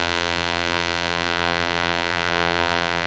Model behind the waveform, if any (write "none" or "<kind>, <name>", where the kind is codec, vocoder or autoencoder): vocoder, BigVGAN v2